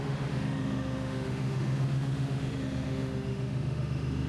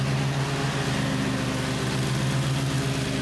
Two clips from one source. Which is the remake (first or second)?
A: first